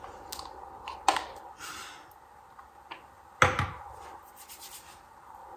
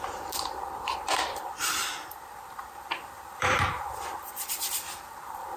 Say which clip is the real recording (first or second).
first